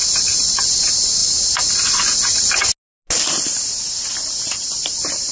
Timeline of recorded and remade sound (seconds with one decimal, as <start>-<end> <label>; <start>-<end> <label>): 0.0-0.6 recorded; 0.6-1.2 remade; 1.2-4.4 recorded; 4.4-5.3 remade